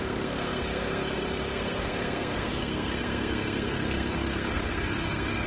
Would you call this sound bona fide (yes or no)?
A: no